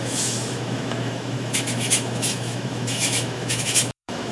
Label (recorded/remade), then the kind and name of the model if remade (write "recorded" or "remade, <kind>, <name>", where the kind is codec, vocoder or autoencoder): remade, autoencoder, DAC-VAE